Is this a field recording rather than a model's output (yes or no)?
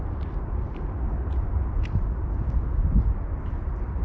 yes